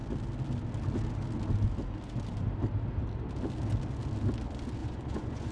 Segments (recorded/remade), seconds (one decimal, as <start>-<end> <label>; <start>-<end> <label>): 0.0-4.8 recorded; 4.8-5.5 remade